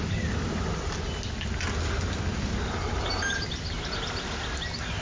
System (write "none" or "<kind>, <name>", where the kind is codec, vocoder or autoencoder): none